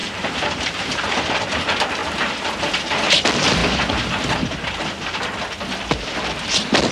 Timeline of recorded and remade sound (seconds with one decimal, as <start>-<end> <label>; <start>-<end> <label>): 0.0-1.5 remade; 1.5-2.0 recorded; 2.0-2.6 remade; 2.6-6.9 recorded